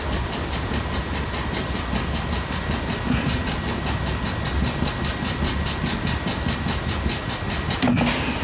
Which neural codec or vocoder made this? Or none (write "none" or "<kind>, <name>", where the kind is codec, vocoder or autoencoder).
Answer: none